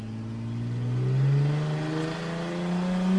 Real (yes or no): yes